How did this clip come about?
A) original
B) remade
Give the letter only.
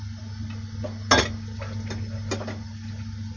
A